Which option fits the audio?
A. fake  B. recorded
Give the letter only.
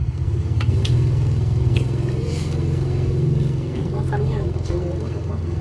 A